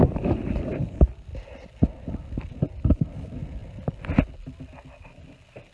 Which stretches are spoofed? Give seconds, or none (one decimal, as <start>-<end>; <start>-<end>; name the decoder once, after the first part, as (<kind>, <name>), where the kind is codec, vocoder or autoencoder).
none

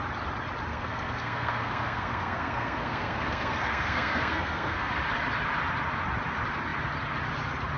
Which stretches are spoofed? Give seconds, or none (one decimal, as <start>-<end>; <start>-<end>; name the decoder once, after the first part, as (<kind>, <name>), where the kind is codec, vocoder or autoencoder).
0.7-4.9 (codec, SNAC)

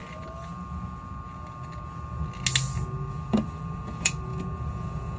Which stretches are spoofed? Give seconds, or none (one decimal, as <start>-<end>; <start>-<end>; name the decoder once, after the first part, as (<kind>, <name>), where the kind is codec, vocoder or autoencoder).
3.1-5.2 (vocoder, Vocos)

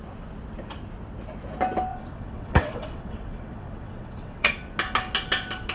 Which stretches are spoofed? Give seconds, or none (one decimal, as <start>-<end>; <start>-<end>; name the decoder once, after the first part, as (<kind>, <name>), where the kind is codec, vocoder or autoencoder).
1.9-4.5 (vocoder, WaveNeXt)

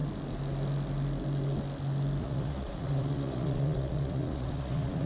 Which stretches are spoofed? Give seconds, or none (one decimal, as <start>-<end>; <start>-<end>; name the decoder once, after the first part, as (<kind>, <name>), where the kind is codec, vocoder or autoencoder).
2.2-5.1 (vocoder, Vocos)

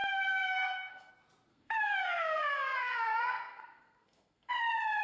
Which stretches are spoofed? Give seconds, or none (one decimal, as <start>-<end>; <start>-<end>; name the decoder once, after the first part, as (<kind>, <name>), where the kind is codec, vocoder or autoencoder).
0.0-1.1 (codec, SNAC); 1.5-4.5

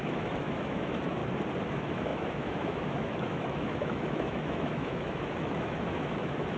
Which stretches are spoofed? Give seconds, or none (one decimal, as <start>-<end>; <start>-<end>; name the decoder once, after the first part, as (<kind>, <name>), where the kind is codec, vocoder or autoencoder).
0.0-1.2 (autoencoder, DAC-VAE); 1.7-6.6

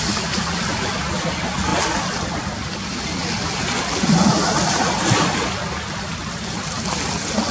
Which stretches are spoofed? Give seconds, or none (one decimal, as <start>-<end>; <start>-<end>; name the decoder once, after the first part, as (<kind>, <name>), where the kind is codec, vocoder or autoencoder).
none